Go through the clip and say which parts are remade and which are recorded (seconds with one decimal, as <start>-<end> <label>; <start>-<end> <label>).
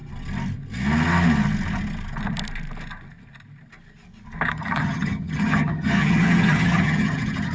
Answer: 0.0-4.5 recorded; 4.5-7.5 remade